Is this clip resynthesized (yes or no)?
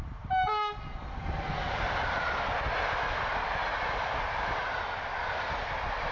no